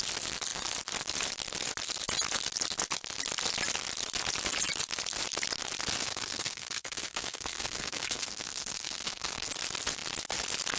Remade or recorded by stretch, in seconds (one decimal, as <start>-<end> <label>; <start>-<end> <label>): 0.0-6.0 recorded; 6.0-9.5 remade; 9.5-10.8 recorded